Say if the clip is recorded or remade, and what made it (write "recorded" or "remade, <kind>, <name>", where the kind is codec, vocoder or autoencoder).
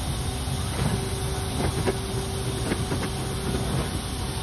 recorded